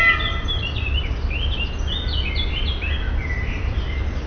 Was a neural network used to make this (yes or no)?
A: no